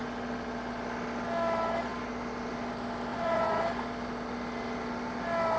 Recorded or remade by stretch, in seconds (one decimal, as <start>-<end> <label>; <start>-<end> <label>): 0.0-3.1 recorded; 3.1-3.6 remade; 3.6-5.6 recorded